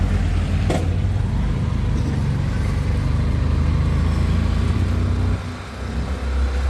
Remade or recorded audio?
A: recorded